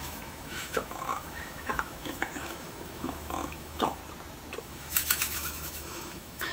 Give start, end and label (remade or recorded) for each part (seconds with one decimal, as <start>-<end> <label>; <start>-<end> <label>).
0.0-4.0 remade; 4.0-4.6 recorded; 4.6-6.5 remade